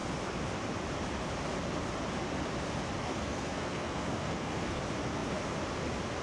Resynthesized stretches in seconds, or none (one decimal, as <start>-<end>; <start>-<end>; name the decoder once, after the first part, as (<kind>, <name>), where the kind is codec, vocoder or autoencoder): 3.0-4.8 (codec, SNAC)